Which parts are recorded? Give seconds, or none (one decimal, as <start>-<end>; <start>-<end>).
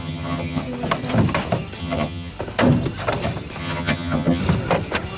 0.6-1.8; 2.3-3.6; 4.4-5.2